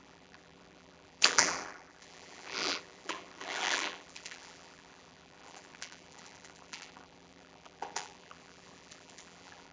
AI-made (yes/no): yes